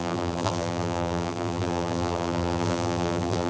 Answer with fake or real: fake